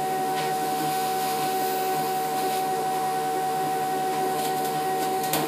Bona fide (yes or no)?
no